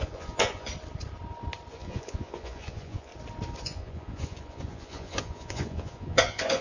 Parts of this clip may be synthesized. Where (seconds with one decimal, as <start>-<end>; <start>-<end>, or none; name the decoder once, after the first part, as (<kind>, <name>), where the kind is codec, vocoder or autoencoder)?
0.0-0.7 (vocoder, Vocos); 1.7-3.1; 3.6-6.6